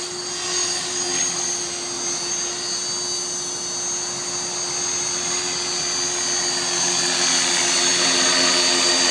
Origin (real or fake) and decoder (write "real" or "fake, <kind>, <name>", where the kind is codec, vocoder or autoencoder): real